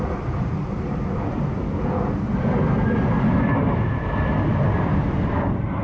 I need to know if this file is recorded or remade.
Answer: recorded